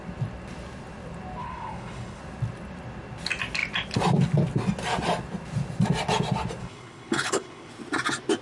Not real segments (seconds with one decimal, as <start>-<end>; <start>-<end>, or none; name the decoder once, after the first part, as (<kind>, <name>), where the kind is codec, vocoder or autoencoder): 1.4-2.2 (codec, HILCodec); 6.6-7.7